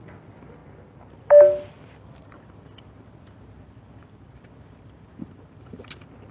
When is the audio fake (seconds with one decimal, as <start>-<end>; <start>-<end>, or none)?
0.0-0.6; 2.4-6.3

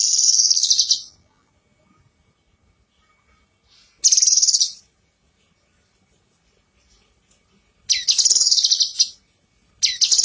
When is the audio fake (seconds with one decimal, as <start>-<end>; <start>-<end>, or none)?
0.0-1.5

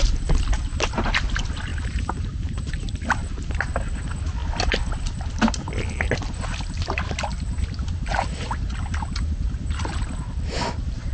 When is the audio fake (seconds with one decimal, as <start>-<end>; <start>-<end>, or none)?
1.7-2.7

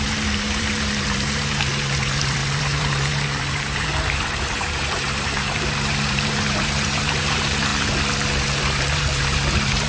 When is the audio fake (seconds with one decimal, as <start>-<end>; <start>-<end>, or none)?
0.0-7.7; 8.6-9.9